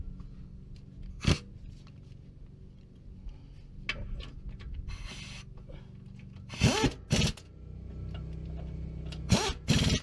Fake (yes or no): no